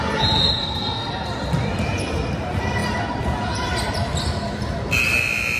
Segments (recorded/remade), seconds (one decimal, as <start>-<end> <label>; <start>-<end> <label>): 0.0-0.6 recorded; 0.6-1.1 remade; 1.1-5.6 recorded